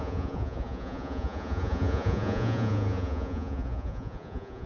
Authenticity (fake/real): fake